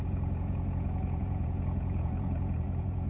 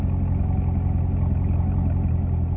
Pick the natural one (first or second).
second